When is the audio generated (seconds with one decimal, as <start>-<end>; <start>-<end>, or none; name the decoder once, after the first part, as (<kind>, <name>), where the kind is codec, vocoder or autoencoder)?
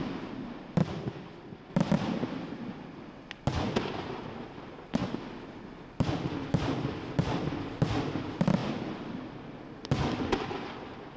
none